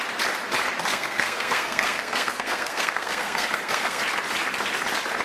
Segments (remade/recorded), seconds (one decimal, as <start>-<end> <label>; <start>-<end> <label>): 0.0-0.9 recorded; 0.9-4.0 remade; 4.0-5.2 recorded